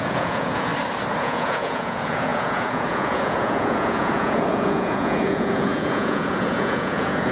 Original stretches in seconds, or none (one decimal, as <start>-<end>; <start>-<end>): 0.7-1.2